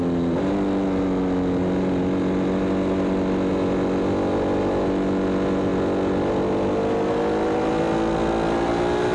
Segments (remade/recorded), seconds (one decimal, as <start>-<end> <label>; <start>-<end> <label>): 0.0-9.1 recorded